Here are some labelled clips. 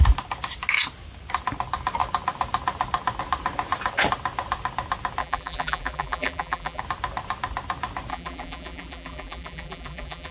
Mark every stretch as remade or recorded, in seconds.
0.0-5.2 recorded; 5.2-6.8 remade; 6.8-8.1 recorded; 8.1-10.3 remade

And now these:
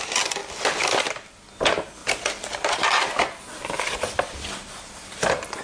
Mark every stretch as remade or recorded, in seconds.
0.0-0.4 recorded; 0.4-1.0 remade; 1.0-2.0 recorded; 2.0-5.6 remade

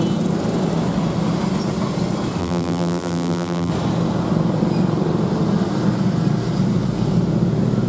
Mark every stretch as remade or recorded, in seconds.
0.0-2.4 recorded; 2.4-3.7 remade; 3.7-7.9 recorded

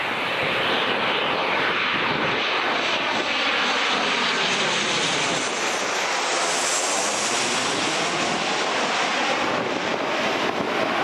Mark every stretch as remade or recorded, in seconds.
0.0-9.9 recorded; 9.9-11.0 remade

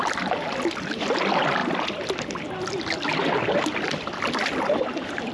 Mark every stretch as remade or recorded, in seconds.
0.0-5.3 recorded

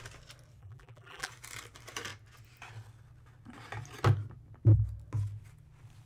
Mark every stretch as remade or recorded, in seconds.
0.0-0.6 recorded; 0.6-1.3 remade; 1.3-6.1 recorded

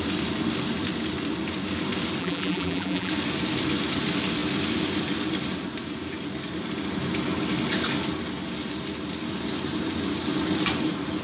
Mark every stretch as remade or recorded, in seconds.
0.0-2.2 recorded; 2.2-3.1 remade; 3.1-11.2 recorded